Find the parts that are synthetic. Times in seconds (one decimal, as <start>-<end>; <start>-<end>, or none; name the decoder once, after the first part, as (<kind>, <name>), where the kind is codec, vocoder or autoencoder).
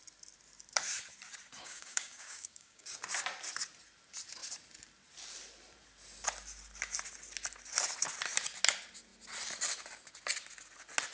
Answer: 1.6-3.0 (codec, DAC)